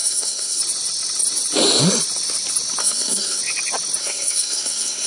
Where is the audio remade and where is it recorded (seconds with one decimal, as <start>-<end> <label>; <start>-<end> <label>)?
0.0-0.6 remade; 0.6-2.8 recorded; 2.8-3.4 remade; 3.4-4.0 recorded; 4.0-5.1 remade